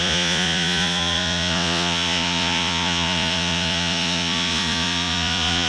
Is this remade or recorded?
remade